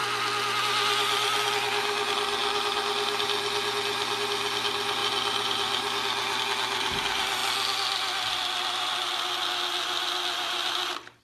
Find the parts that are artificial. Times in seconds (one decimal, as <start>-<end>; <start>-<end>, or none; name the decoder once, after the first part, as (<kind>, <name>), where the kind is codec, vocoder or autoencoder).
none

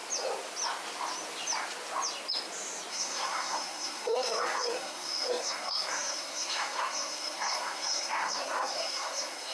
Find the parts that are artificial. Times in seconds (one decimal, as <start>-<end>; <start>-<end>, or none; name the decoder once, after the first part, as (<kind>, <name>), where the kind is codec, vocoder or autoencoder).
2.9-9.5 (codec, SNAC)

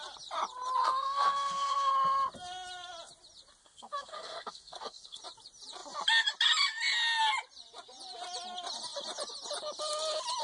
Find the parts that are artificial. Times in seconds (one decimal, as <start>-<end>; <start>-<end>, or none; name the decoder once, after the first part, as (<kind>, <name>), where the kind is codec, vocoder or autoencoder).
0.8-1.9 (codec, SNAC); 3.6-5.2

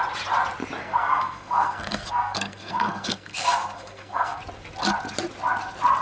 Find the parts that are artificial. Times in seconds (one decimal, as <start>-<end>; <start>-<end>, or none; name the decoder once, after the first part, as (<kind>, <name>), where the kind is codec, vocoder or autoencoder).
0.8-4.4 (codec, SNAC)

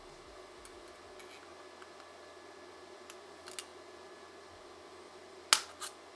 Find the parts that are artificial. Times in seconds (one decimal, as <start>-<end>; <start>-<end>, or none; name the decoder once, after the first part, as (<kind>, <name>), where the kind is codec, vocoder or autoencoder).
none

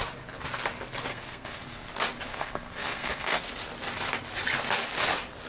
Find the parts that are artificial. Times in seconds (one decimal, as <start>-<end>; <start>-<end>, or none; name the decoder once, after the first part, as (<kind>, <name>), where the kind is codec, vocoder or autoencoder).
1.1-1.9 (codec, SNAC); 2.3-3.4